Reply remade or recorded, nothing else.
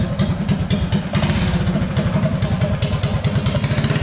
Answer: recorded